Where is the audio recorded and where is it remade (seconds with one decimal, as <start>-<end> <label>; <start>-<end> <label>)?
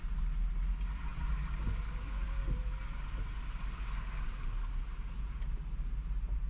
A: 0.0-6.5 recorded